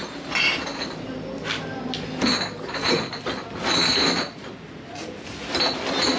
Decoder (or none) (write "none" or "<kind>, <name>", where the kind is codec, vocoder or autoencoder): none